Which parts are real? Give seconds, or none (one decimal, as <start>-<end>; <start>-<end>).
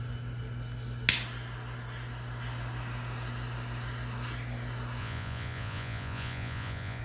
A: 0.0-5.0